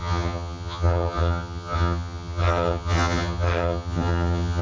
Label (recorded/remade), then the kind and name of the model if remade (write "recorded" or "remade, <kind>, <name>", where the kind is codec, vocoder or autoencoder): remade, vocoder, HiFi-GAN